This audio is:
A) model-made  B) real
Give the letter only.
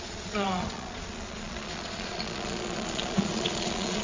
A